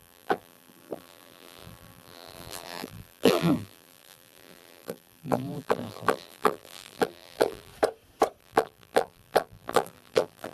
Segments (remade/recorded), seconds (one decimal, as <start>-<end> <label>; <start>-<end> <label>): 0.0-7.7 remade; 7.7-8.4 recorded; 8.4-10.5 remade